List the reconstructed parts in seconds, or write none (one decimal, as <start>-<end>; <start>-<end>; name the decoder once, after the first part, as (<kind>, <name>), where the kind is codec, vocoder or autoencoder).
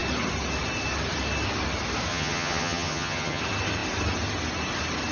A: 2.1-3.4 (vocoder, HiFi-GAN)